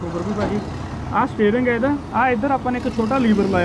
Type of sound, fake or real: real